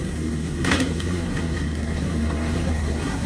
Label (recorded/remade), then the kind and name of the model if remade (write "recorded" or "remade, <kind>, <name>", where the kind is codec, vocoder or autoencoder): remade, codec, SNAC